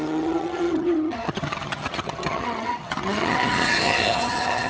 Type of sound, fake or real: fake